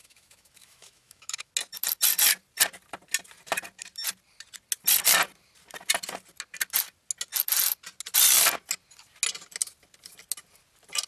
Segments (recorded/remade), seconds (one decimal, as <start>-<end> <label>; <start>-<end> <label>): 0.0-1.5 remade; 1.5-11.1 recorded

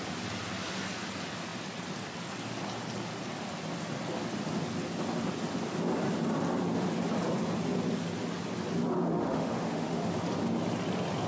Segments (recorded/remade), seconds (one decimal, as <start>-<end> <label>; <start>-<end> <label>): 0.0-9.1 recorded; 9.1-10.1 remade; 10.1-11.3 recorded

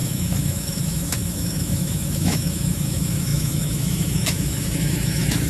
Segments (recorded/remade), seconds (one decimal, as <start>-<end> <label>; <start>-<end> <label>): 0.0-5.5 remade

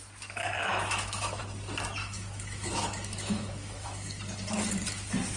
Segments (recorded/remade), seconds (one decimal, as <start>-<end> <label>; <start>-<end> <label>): 0.0-0.6 recorded; 0.6-1.4 remade; 1.4-2.0 recorded; 2.0-4.2 remade; 4.2-5.4 recorded